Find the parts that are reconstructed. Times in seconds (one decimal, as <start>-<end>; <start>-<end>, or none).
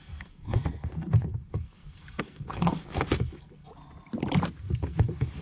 0.0-3.7; 4.6-5.4